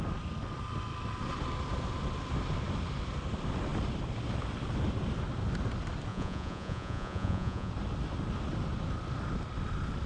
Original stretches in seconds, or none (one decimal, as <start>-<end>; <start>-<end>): 0.0-6.1; 7.7-10.1